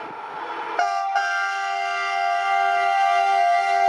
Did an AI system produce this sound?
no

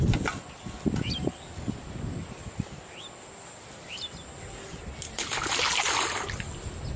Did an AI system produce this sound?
no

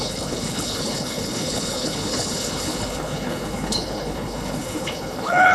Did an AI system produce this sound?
yes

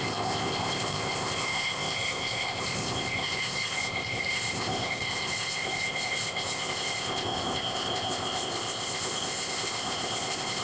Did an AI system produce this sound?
yes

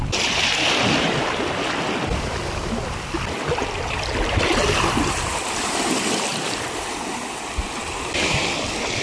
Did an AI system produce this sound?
no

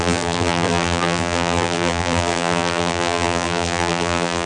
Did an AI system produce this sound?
yes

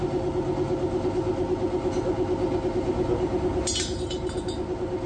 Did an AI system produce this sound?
no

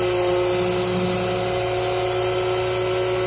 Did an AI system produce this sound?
no